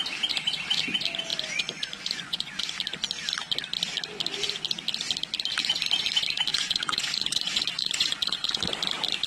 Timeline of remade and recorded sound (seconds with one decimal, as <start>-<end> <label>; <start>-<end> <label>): 0.0-1.3 recorded; 1.3-2.6 remade; 2.6-6.5 recorded; 6.5-8.6 remade; 8.6-9.3 recorded